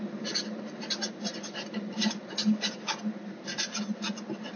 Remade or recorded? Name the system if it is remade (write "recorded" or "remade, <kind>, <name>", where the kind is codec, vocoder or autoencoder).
recorded